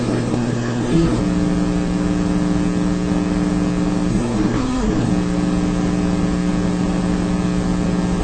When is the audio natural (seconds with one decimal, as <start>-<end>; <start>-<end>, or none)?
1.2-4.1; 5.1-8.2